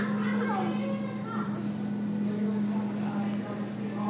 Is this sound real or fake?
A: real